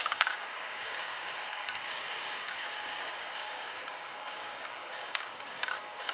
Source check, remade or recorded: remade